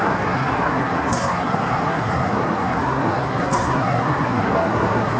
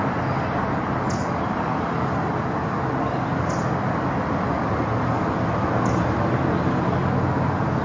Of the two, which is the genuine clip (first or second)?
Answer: second